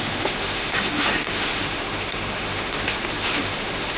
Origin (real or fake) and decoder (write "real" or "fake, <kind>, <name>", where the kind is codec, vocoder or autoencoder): fake, autoencoder, DAC-VAE